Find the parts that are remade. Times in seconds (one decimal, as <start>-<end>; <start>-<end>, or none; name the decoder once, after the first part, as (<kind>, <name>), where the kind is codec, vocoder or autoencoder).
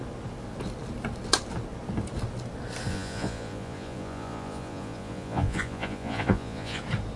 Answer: 2.9-6.8 (vocoder, Vocos)